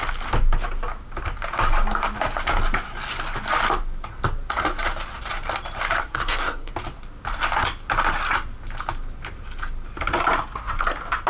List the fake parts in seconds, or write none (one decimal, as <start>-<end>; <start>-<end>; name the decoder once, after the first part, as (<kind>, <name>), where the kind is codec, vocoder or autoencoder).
6.0-6.7 (codec, SNAC)